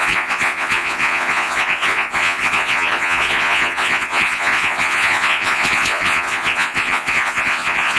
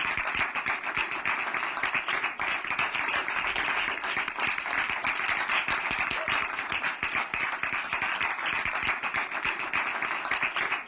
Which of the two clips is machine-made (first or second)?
first